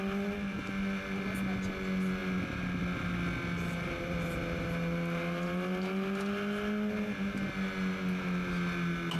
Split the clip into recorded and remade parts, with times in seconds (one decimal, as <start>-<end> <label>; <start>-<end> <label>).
0.0-9.2 recorded